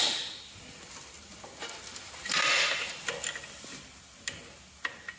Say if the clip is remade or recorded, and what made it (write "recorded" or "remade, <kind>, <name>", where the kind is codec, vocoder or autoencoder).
recorded